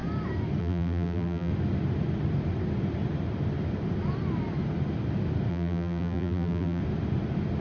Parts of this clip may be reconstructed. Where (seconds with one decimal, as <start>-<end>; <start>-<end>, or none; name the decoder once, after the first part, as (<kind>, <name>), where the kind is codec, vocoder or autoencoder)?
0.6-1.5 (vocoder, BigVGAN v2); 5.5-6.8